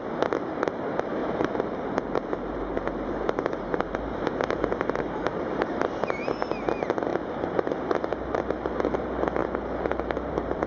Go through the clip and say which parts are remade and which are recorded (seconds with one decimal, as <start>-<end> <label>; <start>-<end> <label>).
0.0-1.2 recorded; 1.2-6.2 remade; 6.2-7.1 recorded; 7.1-8.7 remade; 8.7-9.4 recorded; 9.4-10.7 remade